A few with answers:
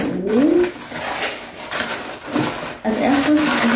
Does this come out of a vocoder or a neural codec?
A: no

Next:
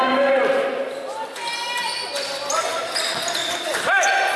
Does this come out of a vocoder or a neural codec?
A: no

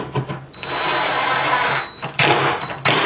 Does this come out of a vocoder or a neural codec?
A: no